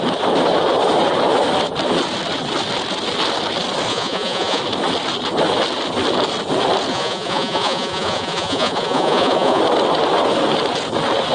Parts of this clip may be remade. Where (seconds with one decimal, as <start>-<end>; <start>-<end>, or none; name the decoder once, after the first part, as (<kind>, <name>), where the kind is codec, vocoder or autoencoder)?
3.9-4.6 (vocoder, Vocos); 6.9-9.6